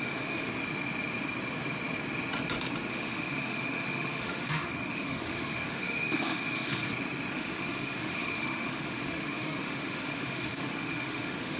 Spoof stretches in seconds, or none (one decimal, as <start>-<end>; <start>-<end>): 0.0-0.5; 2.9-6.8; 7.3-11.6